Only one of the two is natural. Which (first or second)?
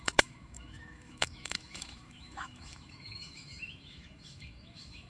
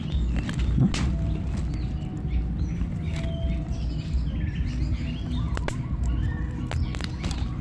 second